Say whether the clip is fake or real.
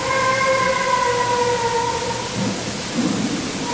real